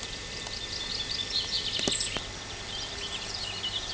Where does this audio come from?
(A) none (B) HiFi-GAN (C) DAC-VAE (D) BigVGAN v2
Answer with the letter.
D